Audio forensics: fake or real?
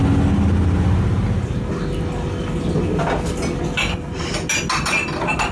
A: real